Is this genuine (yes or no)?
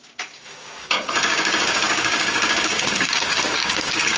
no